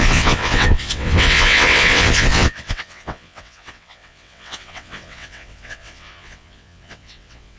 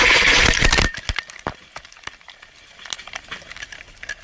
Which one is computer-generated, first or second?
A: first